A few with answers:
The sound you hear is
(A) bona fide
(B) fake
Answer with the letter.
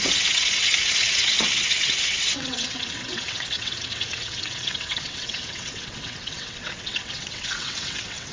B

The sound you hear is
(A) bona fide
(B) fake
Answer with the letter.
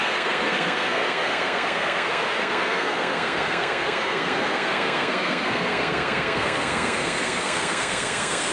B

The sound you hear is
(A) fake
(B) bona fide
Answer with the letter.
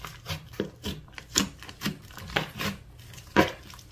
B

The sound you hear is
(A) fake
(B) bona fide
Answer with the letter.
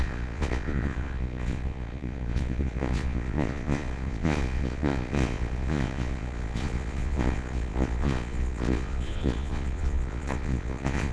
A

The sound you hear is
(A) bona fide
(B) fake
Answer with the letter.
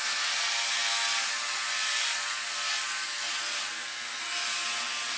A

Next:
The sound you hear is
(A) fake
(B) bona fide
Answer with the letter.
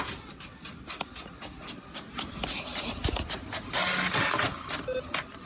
B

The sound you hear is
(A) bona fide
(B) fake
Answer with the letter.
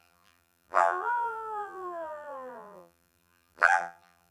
B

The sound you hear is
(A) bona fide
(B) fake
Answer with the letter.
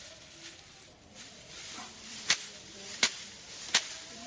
A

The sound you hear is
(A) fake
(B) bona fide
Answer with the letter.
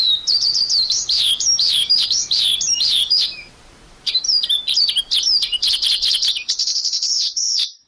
A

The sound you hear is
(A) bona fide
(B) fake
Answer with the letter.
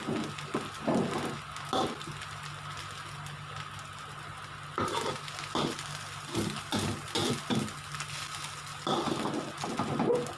A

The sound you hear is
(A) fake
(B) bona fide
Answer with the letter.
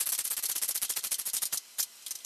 B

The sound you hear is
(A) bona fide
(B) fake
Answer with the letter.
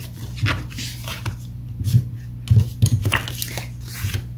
A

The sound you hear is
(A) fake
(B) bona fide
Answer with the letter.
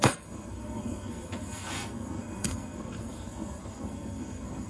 A